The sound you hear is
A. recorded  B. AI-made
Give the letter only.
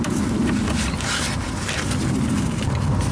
A